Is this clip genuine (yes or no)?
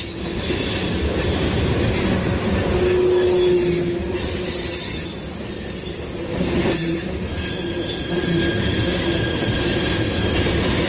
yes